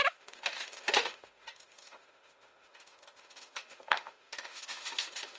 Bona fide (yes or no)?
no